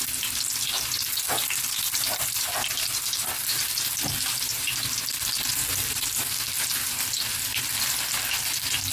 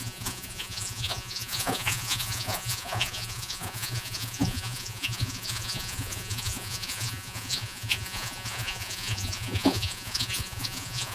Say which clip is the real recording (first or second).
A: first